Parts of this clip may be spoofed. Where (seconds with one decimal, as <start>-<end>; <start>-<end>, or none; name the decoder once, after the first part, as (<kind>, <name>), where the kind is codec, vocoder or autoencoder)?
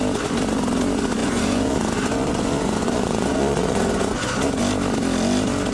1.2-4.6 (vocoder, Vocos)